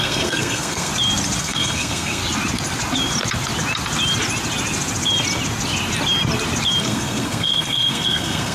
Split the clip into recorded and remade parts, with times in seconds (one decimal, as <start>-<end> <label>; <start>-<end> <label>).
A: 0.0-0.9 remade; 0.9-1.4 recorded; 1.4-2.2 remade; 2.2-6.8 recorded; 6.8-8.5 remade